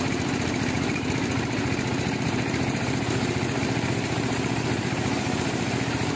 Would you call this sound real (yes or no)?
no